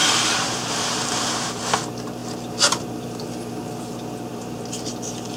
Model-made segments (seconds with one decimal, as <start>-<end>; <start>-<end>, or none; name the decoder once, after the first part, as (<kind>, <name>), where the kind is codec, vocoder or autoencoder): 0.0-1.6 (vocoder, BigVGAN v2); 4.3-4.9